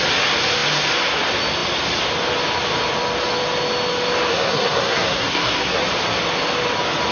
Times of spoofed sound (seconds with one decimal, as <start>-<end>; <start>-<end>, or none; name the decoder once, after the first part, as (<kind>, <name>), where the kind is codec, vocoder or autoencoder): 4.3-5.8 (codec, SNAC)